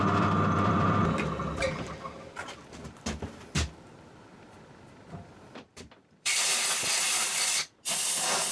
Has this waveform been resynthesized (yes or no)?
yes